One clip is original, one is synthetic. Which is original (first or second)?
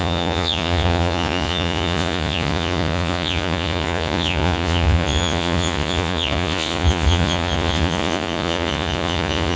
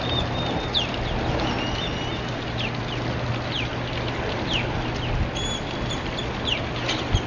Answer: second